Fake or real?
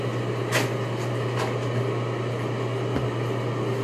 real